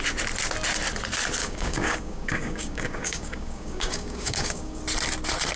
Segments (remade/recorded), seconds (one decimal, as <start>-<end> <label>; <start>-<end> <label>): 0.0-1.4 recorded; 1.4-4.8 remade; 4.8-5.6 recorded